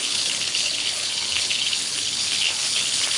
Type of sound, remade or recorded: remade